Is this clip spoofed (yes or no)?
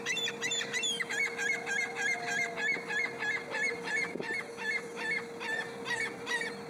no